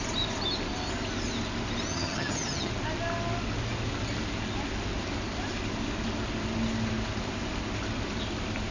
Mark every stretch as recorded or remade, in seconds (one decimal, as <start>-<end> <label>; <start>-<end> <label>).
0.0-1.9 recorded; 1.9-2.7 remade; 2.7-8.7 recorded